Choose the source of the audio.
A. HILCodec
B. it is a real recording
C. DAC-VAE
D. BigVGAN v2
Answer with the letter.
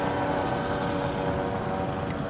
B